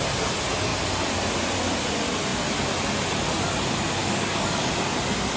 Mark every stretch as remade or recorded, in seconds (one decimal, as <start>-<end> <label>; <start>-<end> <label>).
0.0-4.0 recorded; 4.0-4.7 remade; 4.7-5.4 recorded